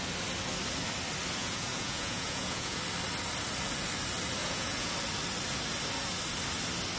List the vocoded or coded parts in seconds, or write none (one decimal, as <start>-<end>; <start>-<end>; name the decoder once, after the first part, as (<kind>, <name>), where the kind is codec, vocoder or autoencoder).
1.4-2.8 (vocoder, Vocos); 4.4-4.9